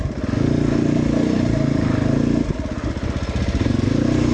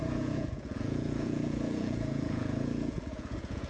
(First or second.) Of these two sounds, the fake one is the second